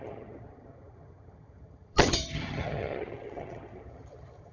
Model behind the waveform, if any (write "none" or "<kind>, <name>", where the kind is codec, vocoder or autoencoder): vocoder, HiFi-GAN